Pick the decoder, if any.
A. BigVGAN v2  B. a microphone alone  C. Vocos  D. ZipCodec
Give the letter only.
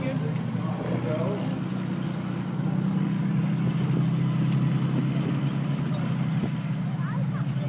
B